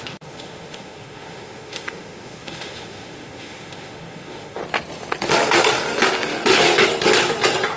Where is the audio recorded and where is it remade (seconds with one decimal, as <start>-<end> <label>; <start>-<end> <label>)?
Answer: 0.0-4.6 remade; 4.6-7.8 recorded